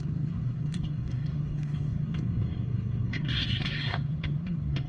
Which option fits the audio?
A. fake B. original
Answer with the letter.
A